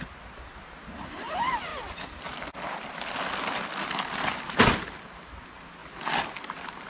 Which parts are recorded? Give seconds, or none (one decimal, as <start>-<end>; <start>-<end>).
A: 0.0-6.9